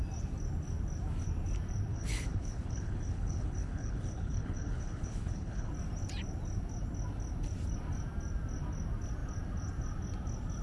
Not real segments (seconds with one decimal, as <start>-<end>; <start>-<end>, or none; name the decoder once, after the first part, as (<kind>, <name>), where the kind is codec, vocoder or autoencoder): 1.9-5.7 (codec, HILCodec)